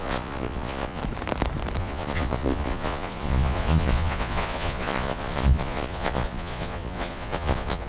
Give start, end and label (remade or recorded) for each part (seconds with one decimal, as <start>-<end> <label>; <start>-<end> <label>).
0.0-1.0 remade; 1.0-1.8 recorded; 1.8-7.9 remade